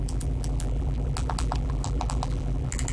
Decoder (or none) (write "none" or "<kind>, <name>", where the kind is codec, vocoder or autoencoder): vocoder, BigVGAN v2